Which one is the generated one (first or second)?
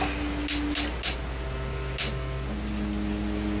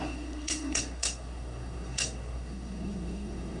second